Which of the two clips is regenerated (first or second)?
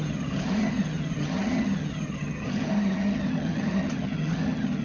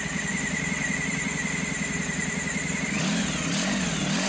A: first